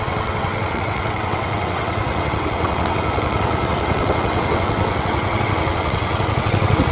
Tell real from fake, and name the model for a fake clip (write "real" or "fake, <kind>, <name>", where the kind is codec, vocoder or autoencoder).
fake, vocoder, WaveNeXt